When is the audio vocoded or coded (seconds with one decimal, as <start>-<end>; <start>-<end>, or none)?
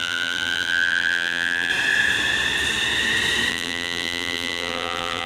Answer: 0.0-1.7; 3.5-5.3